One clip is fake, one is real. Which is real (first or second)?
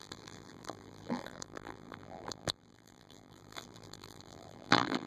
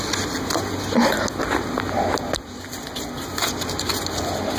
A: second